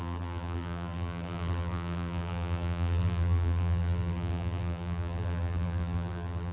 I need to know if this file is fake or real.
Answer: fake